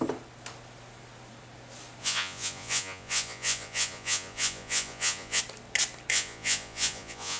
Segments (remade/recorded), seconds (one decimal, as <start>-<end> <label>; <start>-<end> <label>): 0.0-2.0 recorded; 2.0-5.4 remade; 5.4-6.1 recorded; 6.1-7.4 remade